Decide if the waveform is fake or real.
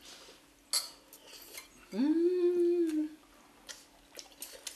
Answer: real